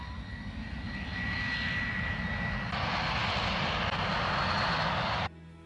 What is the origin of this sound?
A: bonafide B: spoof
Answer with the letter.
A